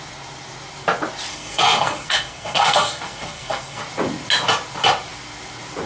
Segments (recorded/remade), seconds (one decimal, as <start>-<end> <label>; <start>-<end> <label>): 0.0-1.3 recorded; 1.3-3.8 remade; 3.8-5.9 recorded